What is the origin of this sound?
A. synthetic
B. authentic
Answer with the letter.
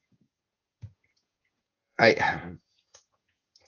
A